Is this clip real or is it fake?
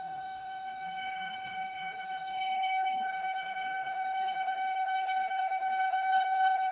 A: fake